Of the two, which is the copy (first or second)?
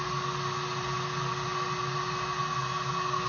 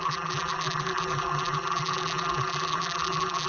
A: second